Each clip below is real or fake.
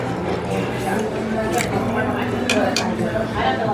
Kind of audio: real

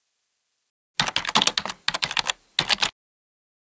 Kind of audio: real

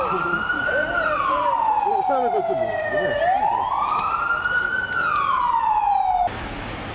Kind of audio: real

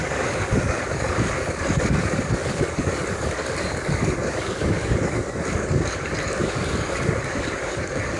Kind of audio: fake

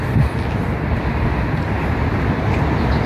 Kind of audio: real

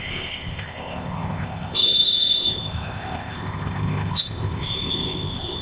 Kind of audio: fake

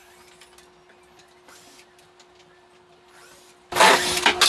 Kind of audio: real